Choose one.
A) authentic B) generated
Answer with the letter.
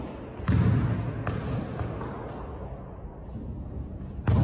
A